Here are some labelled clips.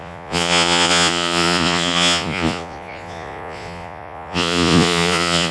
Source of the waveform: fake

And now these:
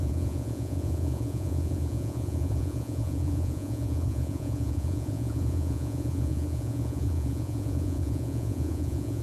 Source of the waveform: fake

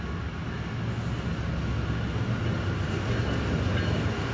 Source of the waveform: real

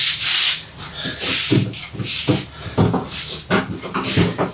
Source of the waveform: real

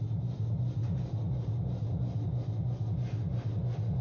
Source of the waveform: real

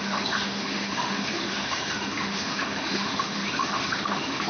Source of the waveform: fake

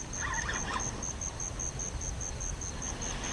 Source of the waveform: real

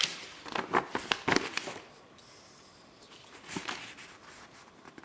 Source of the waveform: real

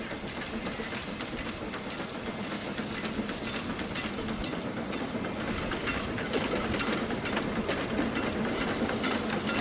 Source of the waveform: real